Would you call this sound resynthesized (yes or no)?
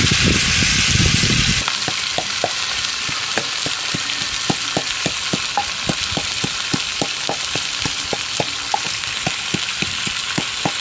no